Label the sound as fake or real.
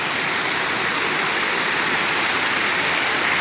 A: real